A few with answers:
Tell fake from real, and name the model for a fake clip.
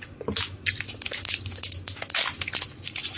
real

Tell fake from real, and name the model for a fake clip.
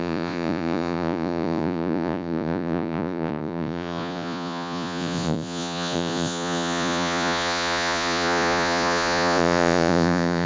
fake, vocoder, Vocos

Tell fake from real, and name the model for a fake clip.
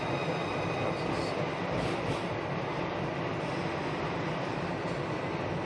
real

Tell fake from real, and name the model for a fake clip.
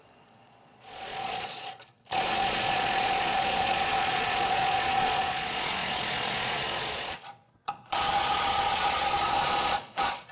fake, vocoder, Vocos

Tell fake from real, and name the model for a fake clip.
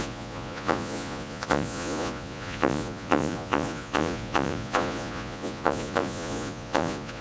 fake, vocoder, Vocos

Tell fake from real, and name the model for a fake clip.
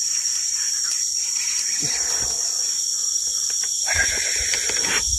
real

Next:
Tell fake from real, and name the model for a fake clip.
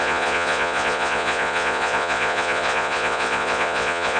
fake, vocoder, Vocos